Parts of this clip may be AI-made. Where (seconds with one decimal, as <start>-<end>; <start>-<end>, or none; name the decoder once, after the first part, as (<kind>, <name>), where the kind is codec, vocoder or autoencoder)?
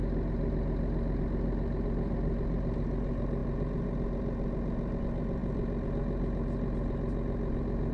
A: none